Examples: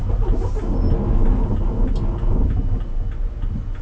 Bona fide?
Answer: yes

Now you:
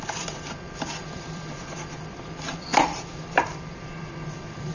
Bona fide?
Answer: no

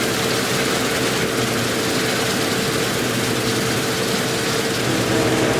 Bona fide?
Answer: yes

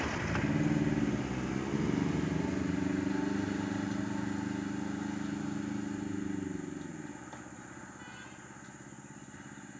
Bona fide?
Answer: yes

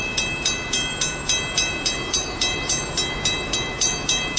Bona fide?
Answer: no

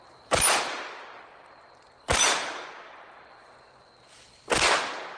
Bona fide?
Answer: no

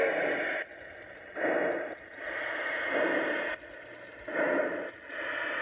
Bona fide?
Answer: yes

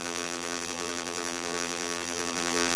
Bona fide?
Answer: no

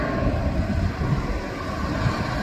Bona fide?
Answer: yes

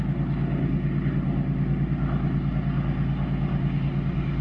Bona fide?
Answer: yes